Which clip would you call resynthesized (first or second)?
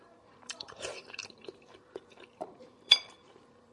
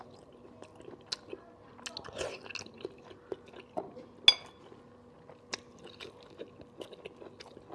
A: first